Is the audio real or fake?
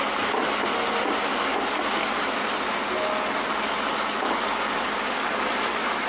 real